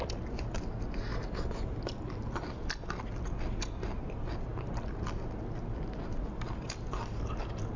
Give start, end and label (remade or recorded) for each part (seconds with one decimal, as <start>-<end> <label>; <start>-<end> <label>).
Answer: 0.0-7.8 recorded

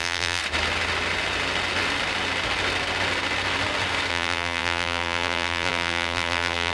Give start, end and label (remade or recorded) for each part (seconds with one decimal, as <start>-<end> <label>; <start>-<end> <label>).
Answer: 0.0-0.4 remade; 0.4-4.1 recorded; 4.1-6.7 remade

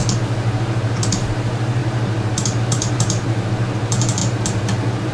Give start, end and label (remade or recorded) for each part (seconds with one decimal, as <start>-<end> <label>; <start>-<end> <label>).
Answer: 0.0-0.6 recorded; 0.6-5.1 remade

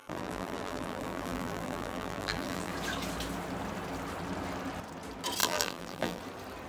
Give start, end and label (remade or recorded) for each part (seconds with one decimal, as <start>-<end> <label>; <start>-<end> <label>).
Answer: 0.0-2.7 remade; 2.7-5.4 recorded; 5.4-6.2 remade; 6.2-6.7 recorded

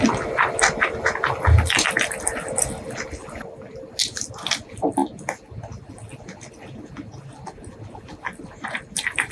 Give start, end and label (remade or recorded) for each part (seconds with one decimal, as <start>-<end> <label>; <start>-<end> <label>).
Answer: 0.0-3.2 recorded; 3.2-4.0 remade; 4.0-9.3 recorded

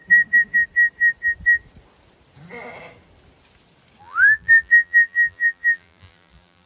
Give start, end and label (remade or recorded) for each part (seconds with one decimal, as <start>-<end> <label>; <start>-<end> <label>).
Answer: 0.0-4.0 recorded; 4.0-6.7 remade

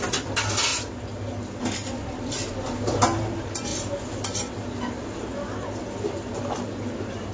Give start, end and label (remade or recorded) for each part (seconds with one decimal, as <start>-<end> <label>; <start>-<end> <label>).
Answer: 0.0-7.3 recorded